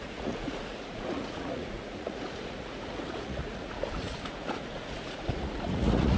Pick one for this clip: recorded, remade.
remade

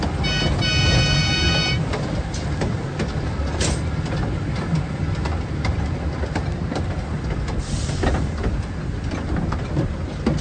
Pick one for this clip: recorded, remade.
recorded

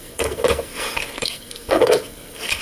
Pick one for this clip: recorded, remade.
remade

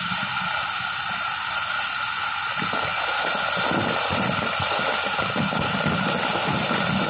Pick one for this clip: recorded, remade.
recorded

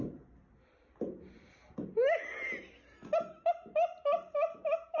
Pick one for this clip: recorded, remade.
recorded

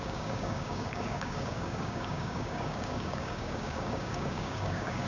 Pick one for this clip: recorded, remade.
remade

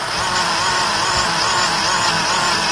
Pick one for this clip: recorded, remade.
recorded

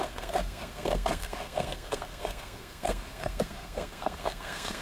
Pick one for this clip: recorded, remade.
remade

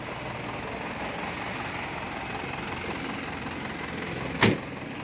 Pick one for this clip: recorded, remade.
recorded